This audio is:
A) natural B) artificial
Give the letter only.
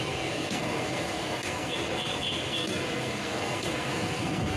B